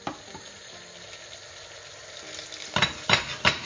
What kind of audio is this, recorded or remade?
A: recorded